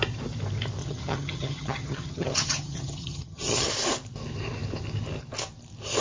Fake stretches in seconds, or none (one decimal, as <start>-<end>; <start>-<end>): 0.8-3.7